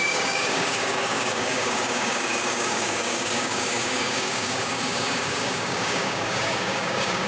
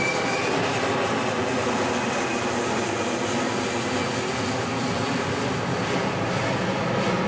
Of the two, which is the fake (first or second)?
first